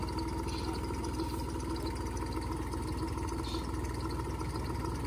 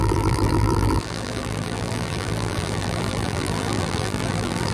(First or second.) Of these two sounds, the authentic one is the first